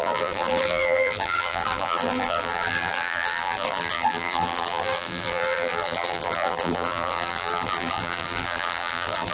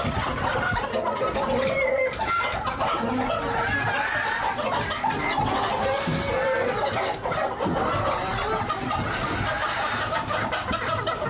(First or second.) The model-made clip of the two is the first